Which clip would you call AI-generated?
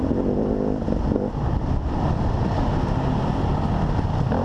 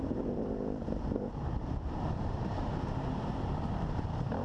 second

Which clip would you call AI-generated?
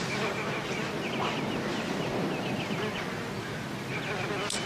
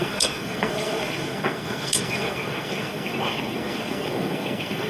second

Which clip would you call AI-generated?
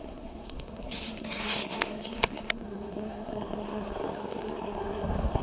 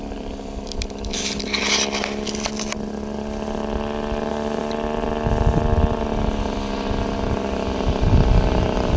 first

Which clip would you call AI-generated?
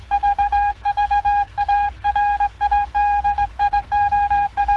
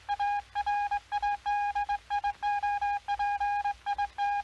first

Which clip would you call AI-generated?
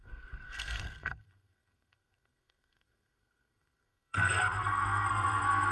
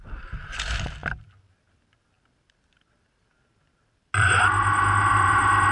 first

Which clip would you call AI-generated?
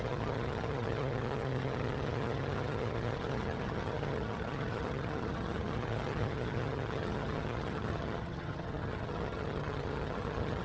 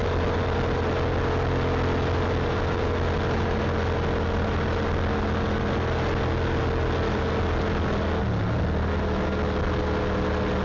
first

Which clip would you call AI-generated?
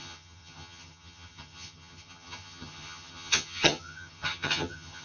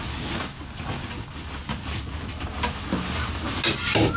first